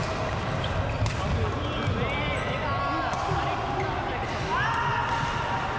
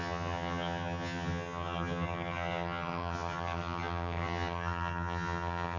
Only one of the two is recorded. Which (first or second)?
first